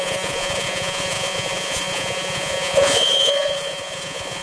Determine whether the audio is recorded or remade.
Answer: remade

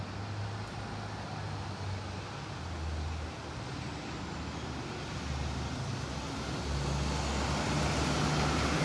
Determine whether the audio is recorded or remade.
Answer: recorded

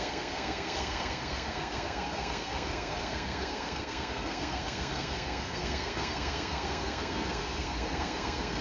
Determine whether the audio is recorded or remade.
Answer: remade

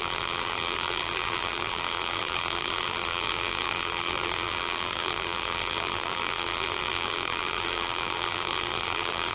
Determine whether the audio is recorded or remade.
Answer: remade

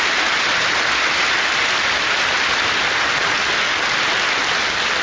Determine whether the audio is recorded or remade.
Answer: recorded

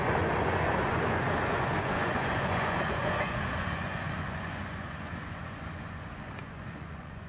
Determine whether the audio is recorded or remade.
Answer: remade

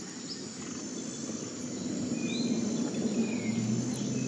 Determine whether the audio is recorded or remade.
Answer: recorded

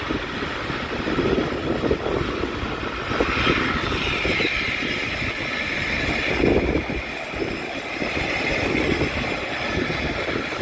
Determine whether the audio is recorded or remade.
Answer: recorded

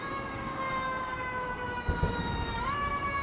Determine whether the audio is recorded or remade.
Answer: remade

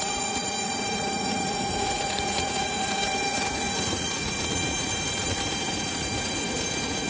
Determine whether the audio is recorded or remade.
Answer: remade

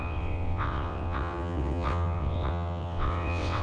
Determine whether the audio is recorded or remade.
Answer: remade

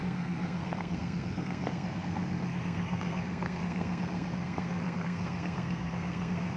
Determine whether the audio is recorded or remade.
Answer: remade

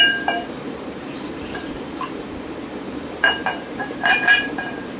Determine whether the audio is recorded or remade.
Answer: remade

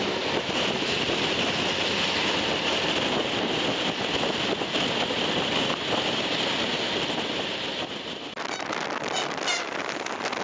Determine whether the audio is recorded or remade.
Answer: recorded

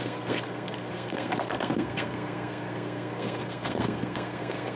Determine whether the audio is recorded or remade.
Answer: remade